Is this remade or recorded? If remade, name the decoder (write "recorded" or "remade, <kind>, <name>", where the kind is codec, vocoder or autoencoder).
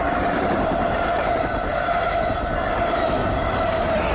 recorded